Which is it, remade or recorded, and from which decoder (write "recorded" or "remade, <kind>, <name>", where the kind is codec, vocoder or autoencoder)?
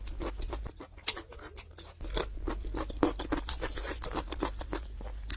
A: recorded